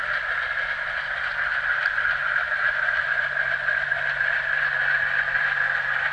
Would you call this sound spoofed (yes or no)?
no